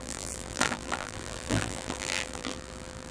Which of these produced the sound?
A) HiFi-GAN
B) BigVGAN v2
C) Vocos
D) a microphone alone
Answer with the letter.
B